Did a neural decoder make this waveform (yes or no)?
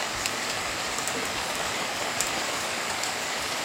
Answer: yes